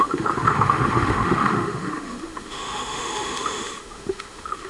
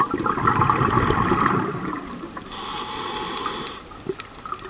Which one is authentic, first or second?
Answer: second